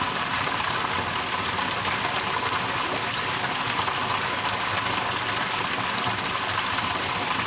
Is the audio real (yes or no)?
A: yes